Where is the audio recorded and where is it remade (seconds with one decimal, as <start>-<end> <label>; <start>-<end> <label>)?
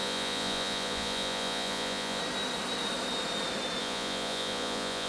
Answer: 0.0-2.2 remade; 2.2-3.8 recorded; 3.8-5.1 remade